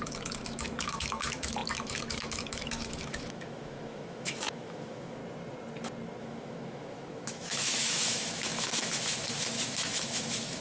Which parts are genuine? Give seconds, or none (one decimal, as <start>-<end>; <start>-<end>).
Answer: 5.2-6.2